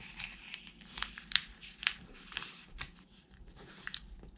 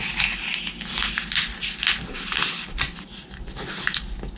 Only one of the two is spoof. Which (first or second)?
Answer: first